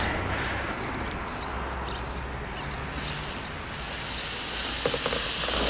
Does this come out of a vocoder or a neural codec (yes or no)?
no